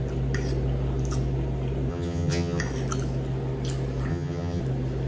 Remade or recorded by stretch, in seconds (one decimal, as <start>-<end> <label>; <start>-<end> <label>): 0.0-1.9 recorded; 1.9-2.6 remade; 2.6-4.1 recorded; 4.1-4.6 remade; 4.6-5.1 recorded